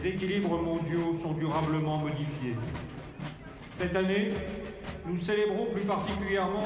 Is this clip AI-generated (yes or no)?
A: no